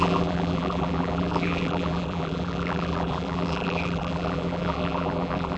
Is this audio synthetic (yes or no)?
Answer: yes